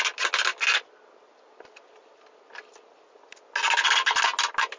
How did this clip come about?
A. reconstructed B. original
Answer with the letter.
B